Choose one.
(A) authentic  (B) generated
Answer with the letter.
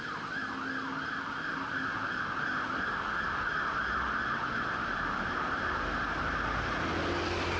A